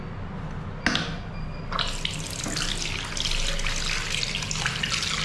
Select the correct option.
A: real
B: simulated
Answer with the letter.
A